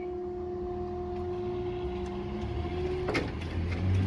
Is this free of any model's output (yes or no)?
yes